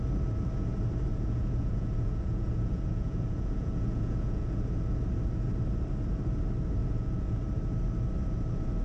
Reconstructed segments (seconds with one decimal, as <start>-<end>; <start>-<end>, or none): 1.1-5.0; 6.8-7.4